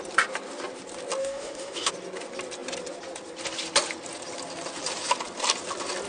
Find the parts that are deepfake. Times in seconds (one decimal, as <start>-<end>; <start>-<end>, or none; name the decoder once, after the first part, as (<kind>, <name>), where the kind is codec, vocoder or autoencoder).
1.2-1.9 (autoencoder, DAC-VAE)